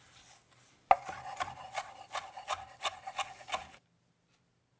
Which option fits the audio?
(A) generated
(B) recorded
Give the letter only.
B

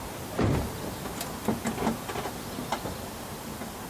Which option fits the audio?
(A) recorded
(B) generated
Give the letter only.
A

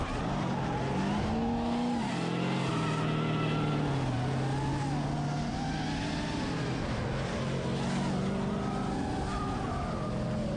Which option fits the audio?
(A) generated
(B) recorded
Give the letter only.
B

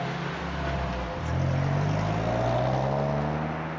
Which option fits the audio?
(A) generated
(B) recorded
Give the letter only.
B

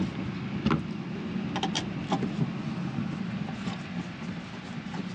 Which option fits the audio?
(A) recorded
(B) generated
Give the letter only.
A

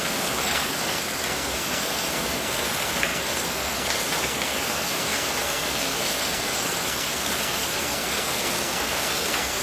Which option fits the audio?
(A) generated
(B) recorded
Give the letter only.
A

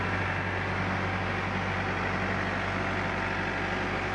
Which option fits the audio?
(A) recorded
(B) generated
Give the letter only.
A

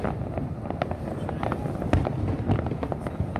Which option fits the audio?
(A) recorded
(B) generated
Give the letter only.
A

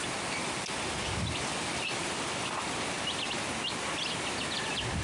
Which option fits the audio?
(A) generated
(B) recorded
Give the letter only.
B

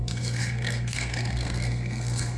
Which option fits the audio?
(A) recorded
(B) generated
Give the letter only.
B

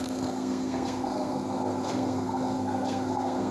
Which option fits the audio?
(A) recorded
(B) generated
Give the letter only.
B